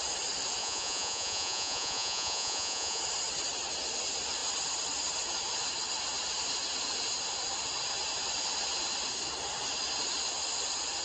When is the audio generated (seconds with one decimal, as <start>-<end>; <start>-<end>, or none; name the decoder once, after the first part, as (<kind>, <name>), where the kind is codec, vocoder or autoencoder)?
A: 0.6-3.0 (vocoder, Vocos)